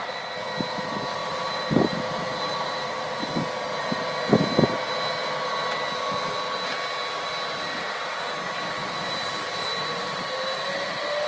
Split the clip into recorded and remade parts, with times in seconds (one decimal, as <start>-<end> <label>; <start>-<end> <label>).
0.0-1.2 recorded; 1.2-3.0 remade; 3.0-8.8 recorded; 8.8-10.7 remade; 10.7-11.3 recorded